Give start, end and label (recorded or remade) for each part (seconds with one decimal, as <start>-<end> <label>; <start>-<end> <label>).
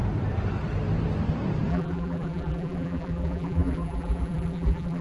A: 0.0-1.7 recorded; 1.7-5.0 remade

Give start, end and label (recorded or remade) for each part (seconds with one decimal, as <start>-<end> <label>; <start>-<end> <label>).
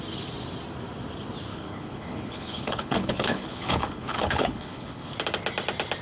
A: 0.0-1.5 recorded; 1.5-5.1 remade; 5.1-6.0 recorded